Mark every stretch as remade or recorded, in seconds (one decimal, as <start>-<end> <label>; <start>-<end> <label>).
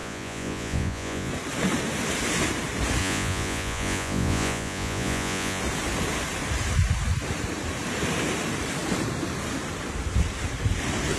0.0-1.3 remade; 1.3-3.0 recorded; 3.0-5.6 remade; 5.6-11.2 recorded